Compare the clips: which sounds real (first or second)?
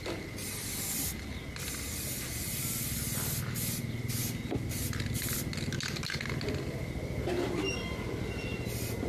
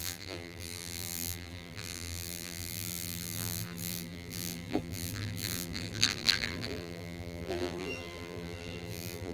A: first